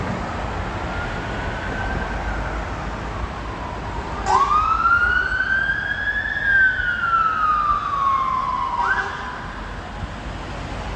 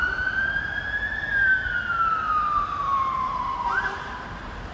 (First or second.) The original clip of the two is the first